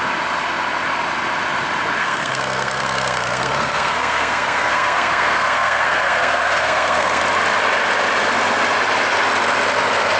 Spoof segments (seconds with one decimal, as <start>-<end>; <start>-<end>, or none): 2.0-7.2